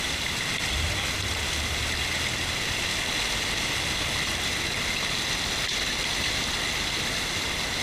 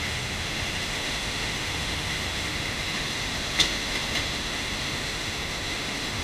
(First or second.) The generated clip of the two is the second